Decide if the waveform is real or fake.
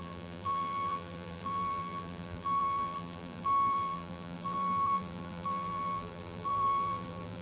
fake